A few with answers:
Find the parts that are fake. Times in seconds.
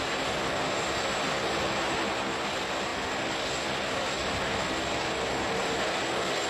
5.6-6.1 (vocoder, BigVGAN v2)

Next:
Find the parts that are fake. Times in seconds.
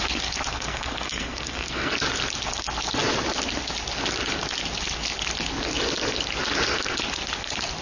0.5-1.9 (codec, SNAC)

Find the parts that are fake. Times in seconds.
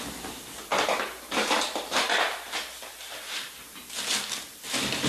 0.7-3.8 (vocoder, BigVGAN v2)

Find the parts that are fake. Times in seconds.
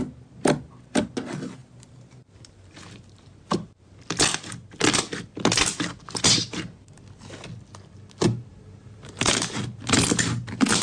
1.6-3.9 (vocoder, BigVGAN v2); 8.5-9.3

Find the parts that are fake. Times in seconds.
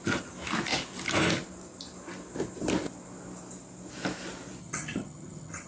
4.6-5.7 (vocoder, HiFi-GAN)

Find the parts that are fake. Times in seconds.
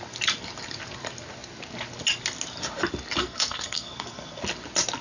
3.2-4.4 (codec, SNAC)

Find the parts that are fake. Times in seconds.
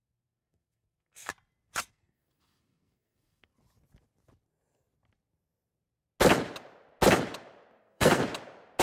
0.0-1.3 (codec, SNAC); 1.9-3.5; 7.8-8.2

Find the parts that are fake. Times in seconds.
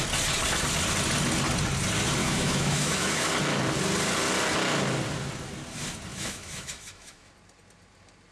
2.2-3.3 (autoencoder, DAC-VAE); 6.1-7.3